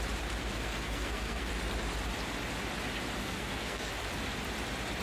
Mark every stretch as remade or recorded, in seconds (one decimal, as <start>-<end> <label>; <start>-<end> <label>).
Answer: 0.0-0.4 recorded; 0.4-1.5 remade; 1.5-3.2 recorded; 3.2-3.9 remade; 3.9-5.0 recorded